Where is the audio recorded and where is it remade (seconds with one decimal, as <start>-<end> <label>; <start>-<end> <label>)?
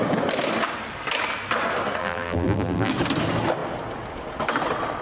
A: 0.0-2.0 recorded; 2.0-2.9 remade; 2.9-5.0 recorded